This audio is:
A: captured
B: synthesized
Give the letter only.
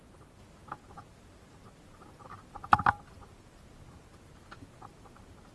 A